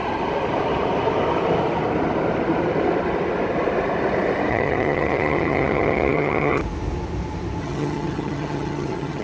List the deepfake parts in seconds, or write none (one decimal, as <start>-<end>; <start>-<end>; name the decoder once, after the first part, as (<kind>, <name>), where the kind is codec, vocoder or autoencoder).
4.5-6.6 (vocoder, HiFi-GAN); 7.6-9.2